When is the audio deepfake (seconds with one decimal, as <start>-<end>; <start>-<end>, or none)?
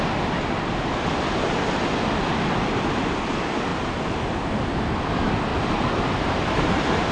3.7-4.3; 5.5-7.1